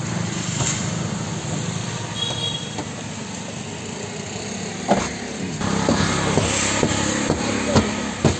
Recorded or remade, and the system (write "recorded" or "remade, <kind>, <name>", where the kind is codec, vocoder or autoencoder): recorded